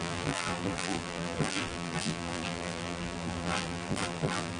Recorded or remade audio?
remade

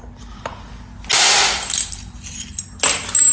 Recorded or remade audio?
recorded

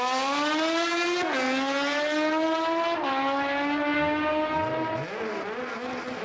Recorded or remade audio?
recorded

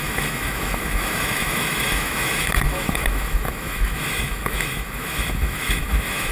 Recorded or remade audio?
remade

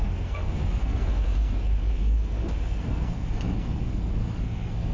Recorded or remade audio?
remade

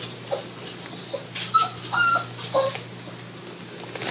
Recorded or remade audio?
recorded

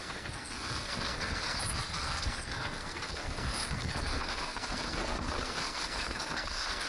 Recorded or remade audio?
remade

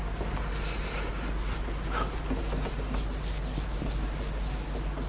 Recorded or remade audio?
recorded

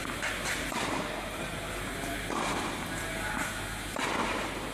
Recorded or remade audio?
recorded